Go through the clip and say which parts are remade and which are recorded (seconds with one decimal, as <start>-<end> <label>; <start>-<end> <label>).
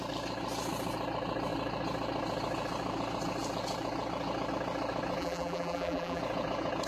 0.0-5.2 recorded; 5.2-6.2 remade; 6.2-6.9 recorded